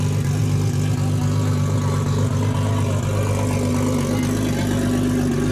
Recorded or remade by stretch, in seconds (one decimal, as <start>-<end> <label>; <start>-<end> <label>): 0.0-5.5 recorded

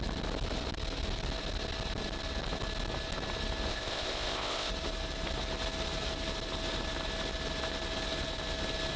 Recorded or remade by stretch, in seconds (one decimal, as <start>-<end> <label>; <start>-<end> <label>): 0.0-3.7 recorded; 3.7-4.7 remade; 4.7-9.0 recorded

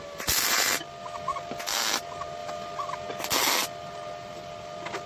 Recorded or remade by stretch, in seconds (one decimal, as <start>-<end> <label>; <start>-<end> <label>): 0.0-5.1 recorded

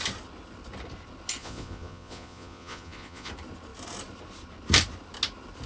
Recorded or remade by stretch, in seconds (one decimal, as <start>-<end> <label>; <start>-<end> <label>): 0.0-1.4 recorded; 1.4-3.3 remade; 3.3-5.7 recorded